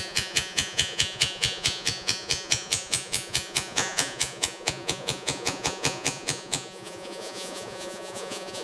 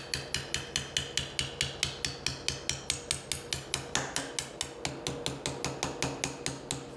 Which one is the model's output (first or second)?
first